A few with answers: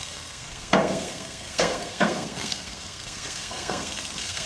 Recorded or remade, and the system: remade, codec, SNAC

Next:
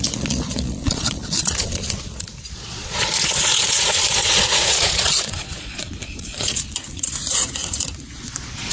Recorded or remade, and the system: remade, vocoder, Vocos